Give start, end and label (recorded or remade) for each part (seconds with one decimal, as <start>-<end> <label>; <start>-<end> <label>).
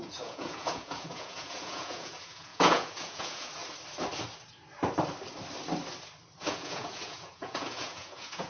0.0-3.6 remade; 3.6-6.4 recorded; 6.4-8.5 remade